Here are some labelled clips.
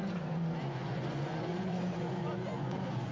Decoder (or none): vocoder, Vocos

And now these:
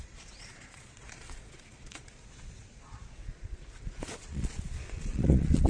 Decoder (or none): vocoder, Vocos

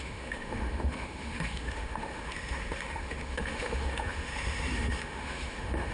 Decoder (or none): autoencoder, DAC-VAE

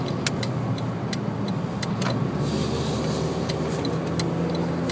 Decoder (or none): none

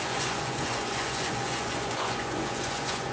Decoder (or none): vocoder, Vocos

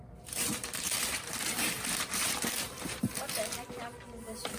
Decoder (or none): vocoder, BigVGAN v2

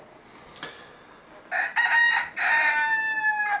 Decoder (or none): none